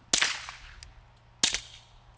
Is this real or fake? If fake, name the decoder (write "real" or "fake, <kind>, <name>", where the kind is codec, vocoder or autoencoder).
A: real